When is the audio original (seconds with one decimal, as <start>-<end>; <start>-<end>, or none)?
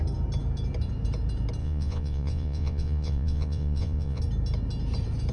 0.0-1.6; 4.2-5.3